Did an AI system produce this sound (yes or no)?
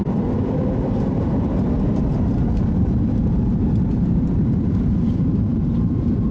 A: yes